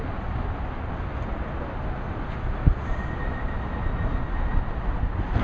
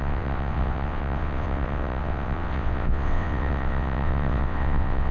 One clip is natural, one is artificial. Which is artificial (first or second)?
second